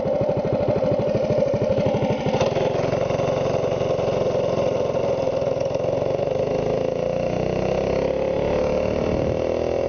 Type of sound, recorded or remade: recorded